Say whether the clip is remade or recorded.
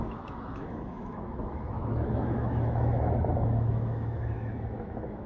remade